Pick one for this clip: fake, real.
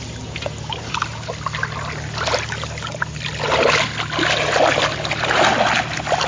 real